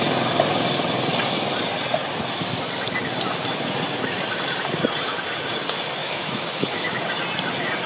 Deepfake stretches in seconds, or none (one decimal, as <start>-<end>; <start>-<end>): 6.0-7.0